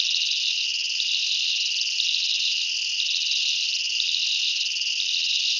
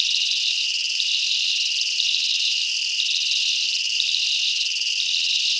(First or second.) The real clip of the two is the first